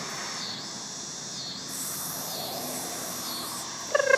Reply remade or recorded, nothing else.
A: remade